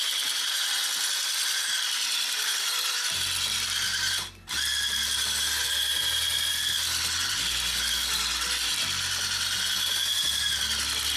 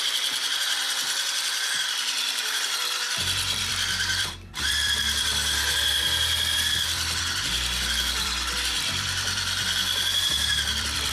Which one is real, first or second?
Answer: first